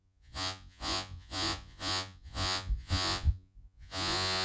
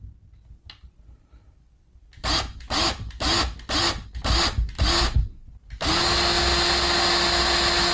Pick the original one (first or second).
second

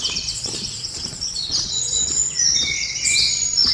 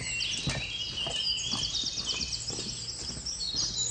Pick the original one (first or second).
second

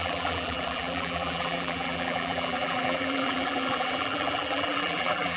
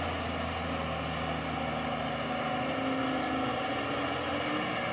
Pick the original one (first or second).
second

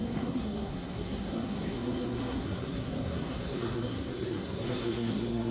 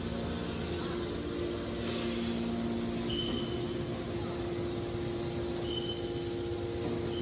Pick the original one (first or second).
second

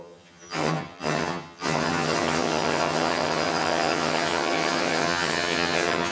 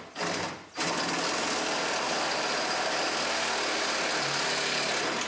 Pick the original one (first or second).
second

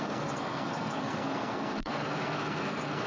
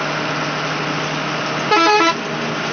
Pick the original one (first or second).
second